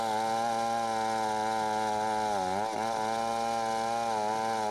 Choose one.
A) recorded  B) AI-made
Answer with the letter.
A